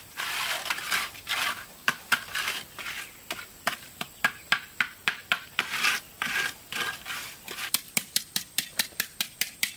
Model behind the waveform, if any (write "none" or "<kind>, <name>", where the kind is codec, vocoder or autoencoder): vocoder, BigVGAN v2